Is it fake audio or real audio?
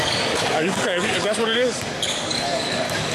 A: fake